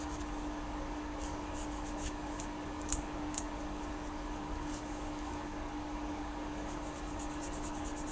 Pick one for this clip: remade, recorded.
remade